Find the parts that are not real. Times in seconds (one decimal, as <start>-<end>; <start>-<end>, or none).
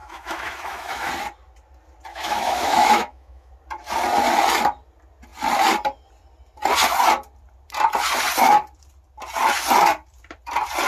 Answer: 0.0-1.1; 2.1-3.5